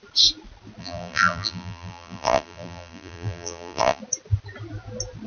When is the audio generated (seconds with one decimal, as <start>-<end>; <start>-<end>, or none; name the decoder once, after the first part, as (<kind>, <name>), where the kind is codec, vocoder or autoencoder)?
0.8-4.0 (vocoder, BigVGAN v2)